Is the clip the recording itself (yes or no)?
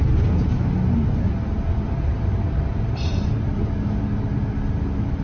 yes